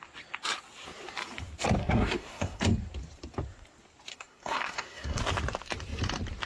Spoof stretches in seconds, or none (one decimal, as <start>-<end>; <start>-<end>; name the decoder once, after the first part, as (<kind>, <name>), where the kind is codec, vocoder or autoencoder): 1.8-2.6 (codec, SNAC); 4.1-5.2